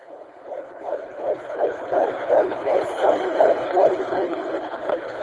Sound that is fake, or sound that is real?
fake